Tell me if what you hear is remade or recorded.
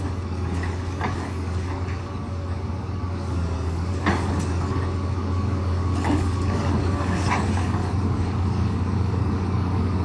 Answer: remade